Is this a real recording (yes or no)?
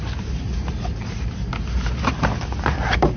yes